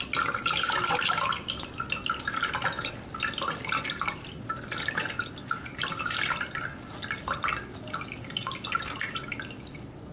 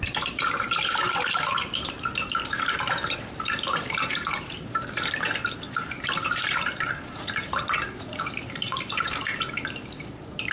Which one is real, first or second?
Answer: first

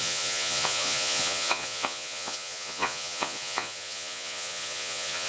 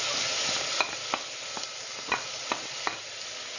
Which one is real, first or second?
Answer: second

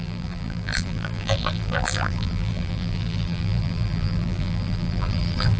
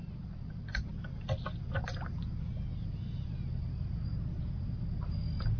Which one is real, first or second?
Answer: second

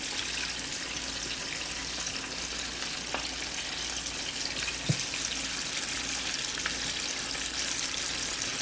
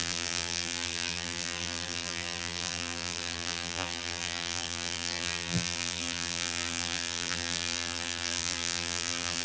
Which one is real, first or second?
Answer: first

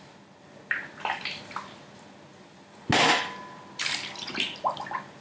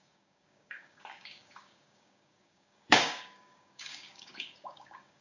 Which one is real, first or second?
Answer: first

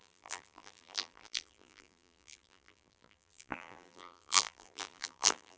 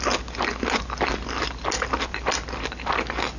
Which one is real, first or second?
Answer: second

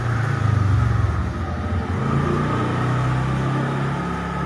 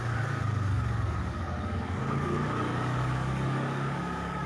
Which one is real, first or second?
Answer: first